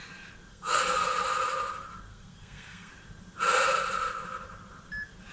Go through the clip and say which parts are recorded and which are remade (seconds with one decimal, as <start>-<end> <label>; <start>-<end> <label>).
0.0-0.5 recorded; 0.5-1.0 remade; 1.0-2.1 recorded; 2.1-2.9 remade; 2.9-5.3 recorded